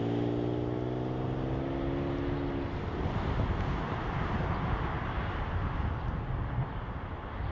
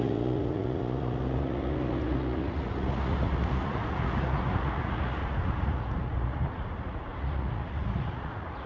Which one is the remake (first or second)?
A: second